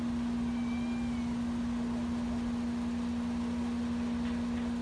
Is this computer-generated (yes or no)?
no